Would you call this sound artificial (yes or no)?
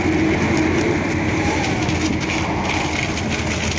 no